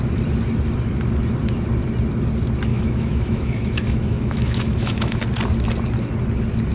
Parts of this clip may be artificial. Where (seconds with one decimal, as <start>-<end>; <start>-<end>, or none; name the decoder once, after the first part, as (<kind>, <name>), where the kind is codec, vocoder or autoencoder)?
2.7-5.2 (autoencoder, DAC-VAE)